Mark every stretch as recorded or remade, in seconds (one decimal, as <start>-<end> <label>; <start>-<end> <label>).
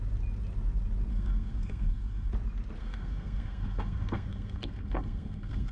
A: 0.0-1.1 recorded; 1.1-2.3 remade; 2.3-2.8 recorded; 2.8-5.7 remade